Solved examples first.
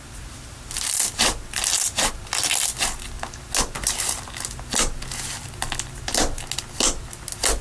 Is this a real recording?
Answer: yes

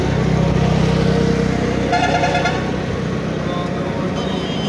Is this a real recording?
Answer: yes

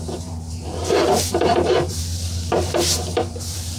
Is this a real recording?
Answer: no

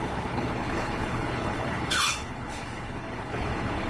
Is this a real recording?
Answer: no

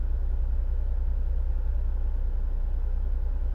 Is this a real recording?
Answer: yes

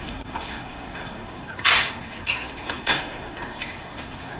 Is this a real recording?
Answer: no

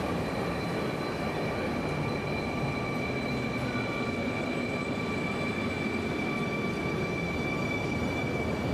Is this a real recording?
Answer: yes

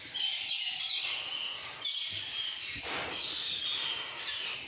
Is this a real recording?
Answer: no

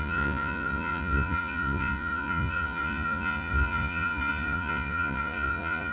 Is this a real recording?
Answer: no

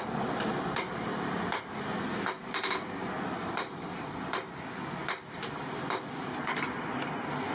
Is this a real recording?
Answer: yes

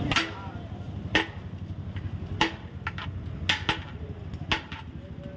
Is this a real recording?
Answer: yes